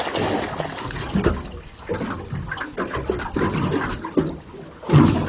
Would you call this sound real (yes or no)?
yes